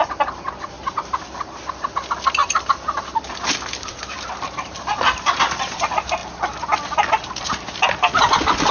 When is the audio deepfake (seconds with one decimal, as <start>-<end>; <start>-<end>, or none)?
2.4-3.1